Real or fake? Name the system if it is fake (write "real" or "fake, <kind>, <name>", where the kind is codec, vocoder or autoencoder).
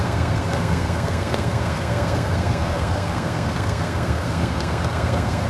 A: fake, codec, SNAC